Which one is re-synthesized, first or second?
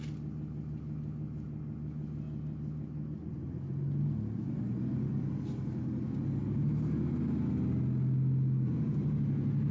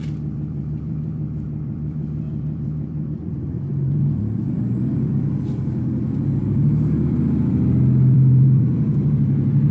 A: second